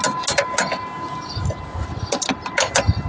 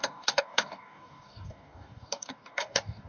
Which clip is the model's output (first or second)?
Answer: second